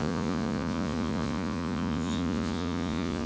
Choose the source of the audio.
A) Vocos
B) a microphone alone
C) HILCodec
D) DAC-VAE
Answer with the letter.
A